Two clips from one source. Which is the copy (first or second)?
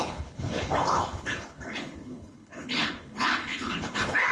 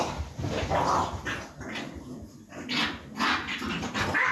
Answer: first